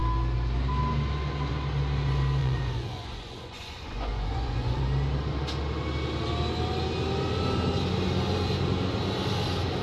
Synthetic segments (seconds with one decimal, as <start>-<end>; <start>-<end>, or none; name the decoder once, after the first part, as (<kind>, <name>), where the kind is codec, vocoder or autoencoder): 2.4-4.8 (vocoder, Vocos)